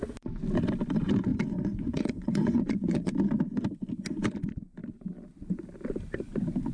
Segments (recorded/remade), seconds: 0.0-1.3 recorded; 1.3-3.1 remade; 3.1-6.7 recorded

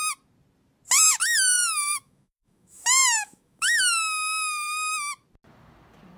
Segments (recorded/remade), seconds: 0.0-1.2 recorded; 1.2-4.9 remade; 4.9-6.2 recorded

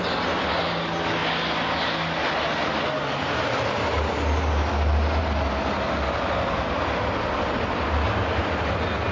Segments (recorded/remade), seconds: 0.0-9.1 recorded

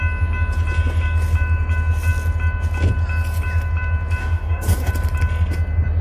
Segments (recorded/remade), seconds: 0.0-4.2 recorded; 4.2-4.9 remade; 4.9-6.0 recorded

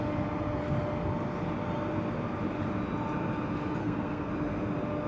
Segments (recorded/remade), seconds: 0.0-3.8 recorded; 3.8-4.3 remade; 4.3-5.1 recorded

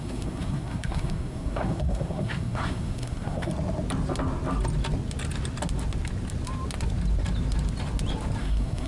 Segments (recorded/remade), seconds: 0.0-3.5 remade; 3.5-8.4 recorded; 8.4-8.9 remade